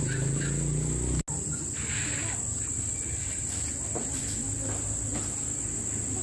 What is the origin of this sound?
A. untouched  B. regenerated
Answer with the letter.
A